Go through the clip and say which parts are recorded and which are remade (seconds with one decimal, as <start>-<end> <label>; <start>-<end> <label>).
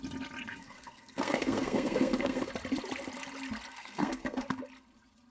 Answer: 0.0-0.5 recorded; 0.5-2.5 remade; 2.5-3.7 recorded; 3.7-4.6 remade; 4.6-5.3 recorded